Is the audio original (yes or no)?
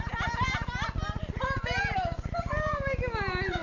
yes